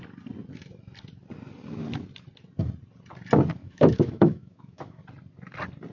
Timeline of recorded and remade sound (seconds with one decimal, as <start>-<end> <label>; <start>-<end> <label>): 0.0-3.6 recorded; 3.6-5.0 remade; 5.0-5.9 recorded